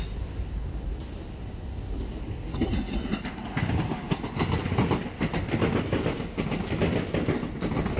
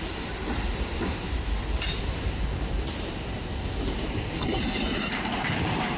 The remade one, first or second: second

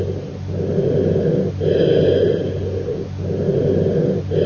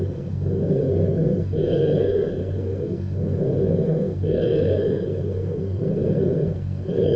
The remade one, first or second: second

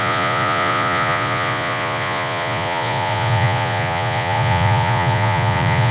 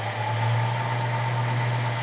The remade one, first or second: first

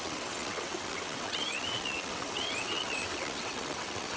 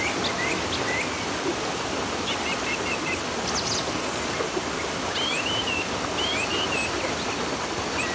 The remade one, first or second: first